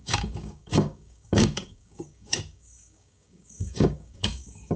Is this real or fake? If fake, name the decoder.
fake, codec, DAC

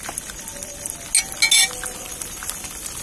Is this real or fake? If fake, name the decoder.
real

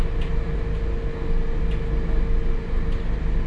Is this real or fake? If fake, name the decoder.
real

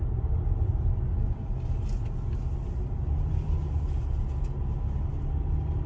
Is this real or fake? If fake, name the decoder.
real